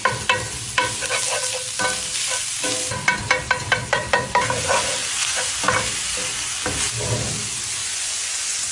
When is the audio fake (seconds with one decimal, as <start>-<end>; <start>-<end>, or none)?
5.0-5.5; 7.8-8.7